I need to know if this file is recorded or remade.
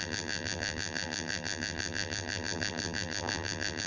remade